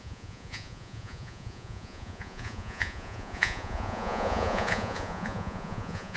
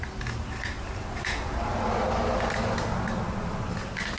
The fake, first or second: first